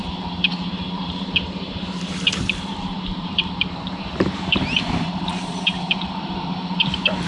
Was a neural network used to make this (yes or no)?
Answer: yes